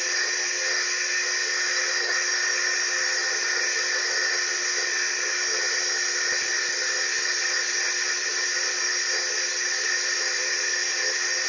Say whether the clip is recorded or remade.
recorded